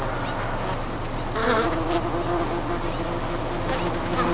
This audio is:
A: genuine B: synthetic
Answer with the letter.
A